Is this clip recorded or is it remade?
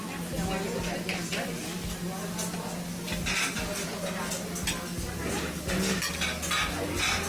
recorded